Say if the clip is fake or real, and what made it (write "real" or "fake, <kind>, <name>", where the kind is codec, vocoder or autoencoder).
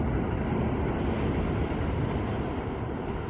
real